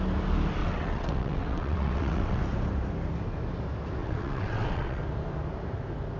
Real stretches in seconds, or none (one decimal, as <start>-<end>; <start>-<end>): 0.0-0.6; 2.4-4.0; 5.0-6.2